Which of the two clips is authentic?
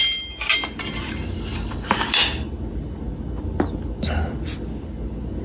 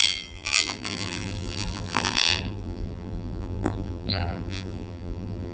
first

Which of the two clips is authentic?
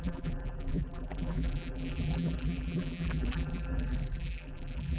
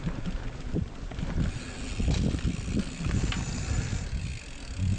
second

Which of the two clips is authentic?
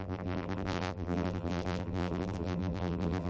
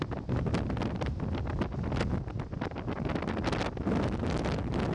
second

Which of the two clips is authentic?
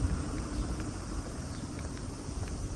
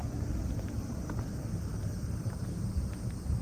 second